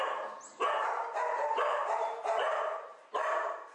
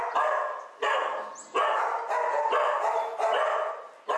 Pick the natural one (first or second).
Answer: second